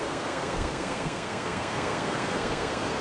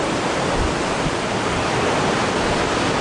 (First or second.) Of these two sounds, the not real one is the first